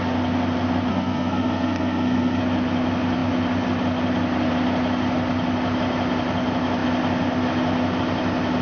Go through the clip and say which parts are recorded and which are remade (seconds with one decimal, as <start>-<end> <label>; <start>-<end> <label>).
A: 0.0-0.9 recorded; 0.9-2.4 remade; 2.4-8.6 recorded